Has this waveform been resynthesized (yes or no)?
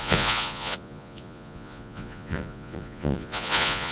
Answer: yes